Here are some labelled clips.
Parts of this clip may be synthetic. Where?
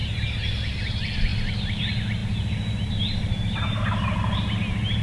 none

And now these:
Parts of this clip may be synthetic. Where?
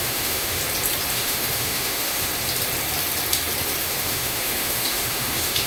0.0-0.6 (autoencoder, DAC-VAE); 1.1-2.3; 3.8-5.7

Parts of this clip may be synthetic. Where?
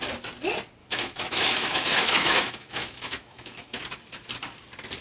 0.8-3.8 (autoencoder, DAC-VAE)